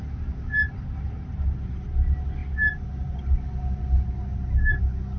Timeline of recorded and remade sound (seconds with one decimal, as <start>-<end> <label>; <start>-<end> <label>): 0.0-5.2 recorded